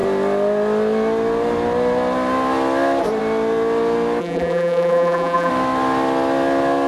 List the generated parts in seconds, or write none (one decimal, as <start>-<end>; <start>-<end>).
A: 4.2-5.5